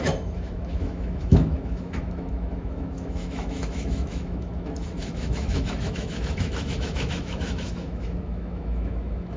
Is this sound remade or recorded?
remade